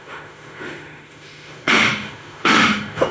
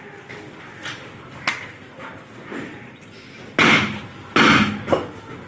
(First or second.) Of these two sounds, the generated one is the first